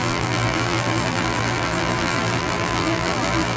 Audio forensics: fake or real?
fake